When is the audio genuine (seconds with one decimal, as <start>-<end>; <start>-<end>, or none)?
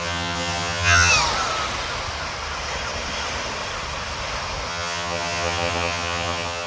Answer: 1.1-4.7